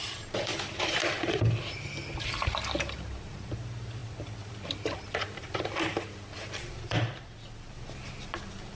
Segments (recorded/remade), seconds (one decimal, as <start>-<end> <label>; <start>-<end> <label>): 0.0-8.8 remade